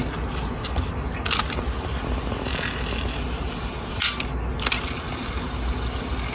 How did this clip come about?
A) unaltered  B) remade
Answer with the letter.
A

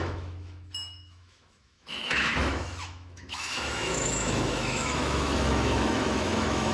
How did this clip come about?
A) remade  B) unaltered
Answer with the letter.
A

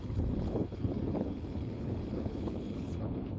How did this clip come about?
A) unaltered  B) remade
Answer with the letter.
B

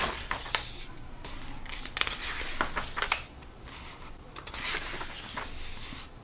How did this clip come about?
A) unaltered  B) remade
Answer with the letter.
A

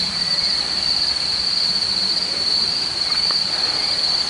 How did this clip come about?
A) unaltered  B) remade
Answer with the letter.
B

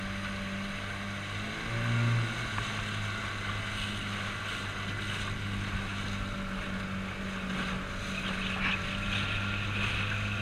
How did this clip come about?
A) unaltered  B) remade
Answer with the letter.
A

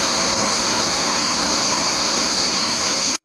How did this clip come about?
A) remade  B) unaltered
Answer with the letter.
A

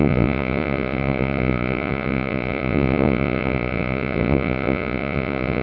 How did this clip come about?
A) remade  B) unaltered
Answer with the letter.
A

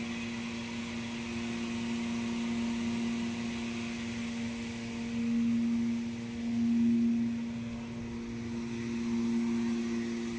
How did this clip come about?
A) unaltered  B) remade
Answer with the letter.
A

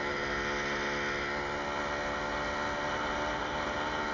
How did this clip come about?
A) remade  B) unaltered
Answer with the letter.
B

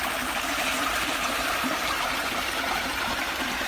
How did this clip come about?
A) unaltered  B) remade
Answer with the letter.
B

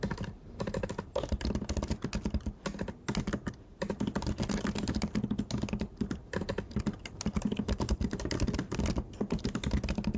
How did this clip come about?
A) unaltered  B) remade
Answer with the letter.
A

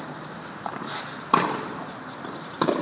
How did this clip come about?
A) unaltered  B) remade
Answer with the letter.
B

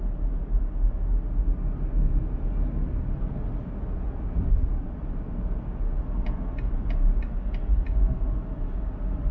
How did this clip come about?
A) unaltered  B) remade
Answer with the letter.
A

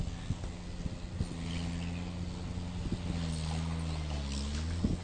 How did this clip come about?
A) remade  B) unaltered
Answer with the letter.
B